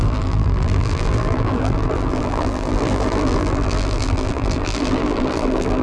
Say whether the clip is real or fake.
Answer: fake